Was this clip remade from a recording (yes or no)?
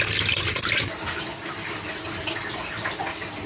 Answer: no